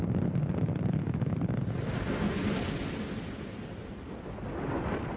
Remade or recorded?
remade